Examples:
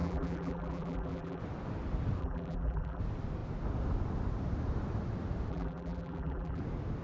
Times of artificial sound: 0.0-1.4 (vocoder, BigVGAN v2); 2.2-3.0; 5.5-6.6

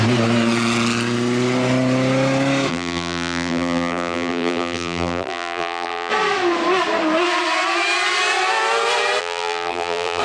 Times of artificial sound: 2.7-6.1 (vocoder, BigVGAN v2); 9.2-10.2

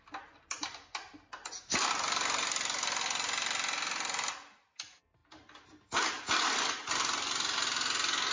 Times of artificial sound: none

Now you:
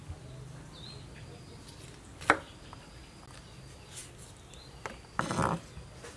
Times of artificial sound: none

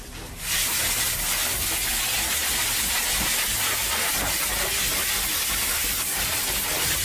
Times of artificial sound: none

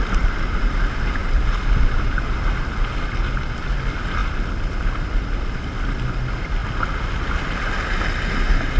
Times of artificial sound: none